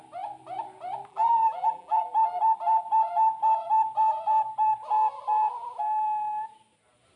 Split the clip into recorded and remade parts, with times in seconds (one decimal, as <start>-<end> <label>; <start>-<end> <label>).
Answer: 0.0-1.1 recorded; 1.1-2.0 remade; 2.0-7.2 recorded